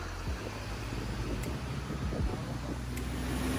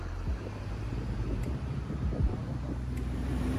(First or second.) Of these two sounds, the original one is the first